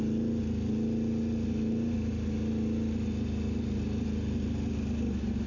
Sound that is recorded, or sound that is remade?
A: recorded